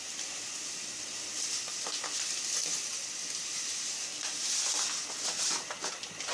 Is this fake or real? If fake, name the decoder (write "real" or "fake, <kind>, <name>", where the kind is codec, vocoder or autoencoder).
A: real